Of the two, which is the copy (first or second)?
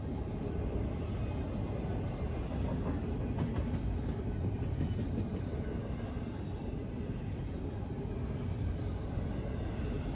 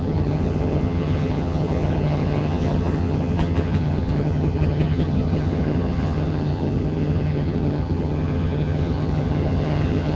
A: second